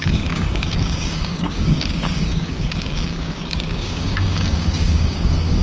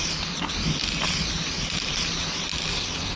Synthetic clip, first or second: first